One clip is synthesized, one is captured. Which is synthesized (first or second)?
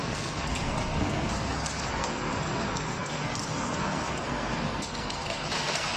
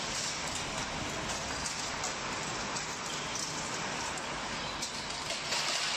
first